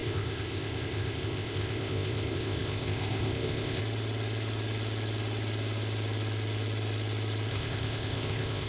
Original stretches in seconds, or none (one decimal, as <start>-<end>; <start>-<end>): 3.8-7.5